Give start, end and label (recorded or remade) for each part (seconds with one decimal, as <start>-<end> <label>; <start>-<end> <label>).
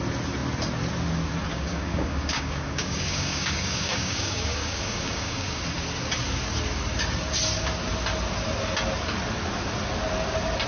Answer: 0.0-1.5 recorded; 1.5-5.6 remade; 5.6-10.7 recorded